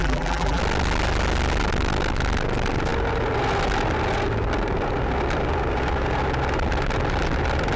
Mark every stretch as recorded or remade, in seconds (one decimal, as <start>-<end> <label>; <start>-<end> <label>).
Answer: 0.0-0.6 remade; 0.6-7.8 recorded